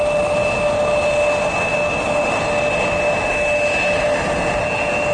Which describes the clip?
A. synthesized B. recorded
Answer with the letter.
B